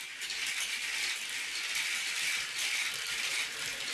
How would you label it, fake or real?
real